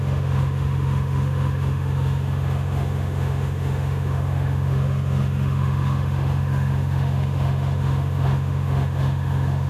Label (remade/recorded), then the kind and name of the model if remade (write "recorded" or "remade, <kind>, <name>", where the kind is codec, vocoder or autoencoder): remade, autoencoder, DAC-VAE